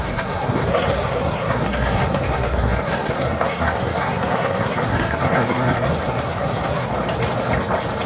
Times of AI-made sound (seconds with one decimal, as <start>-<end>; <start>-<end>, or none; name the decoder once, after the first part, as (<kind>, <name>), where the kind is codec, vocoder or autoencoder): 0.0-6.9 (codec, SNAC)